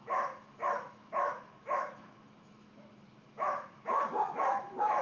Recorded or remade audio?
remade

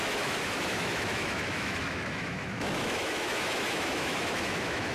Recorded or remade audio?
remade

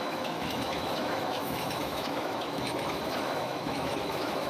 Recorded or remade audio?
remade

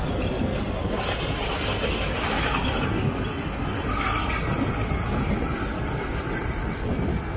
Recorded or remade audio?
recorded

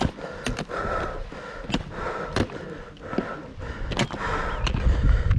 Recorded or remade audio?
recorded